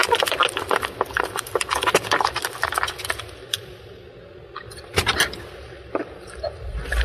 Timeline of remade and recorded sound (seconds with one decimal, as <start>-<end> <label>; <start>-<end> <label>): 0.0-1.1 recorded; 1.1-2.4 remade; 2.4-6.6 recorded; 6.6-7.0 remade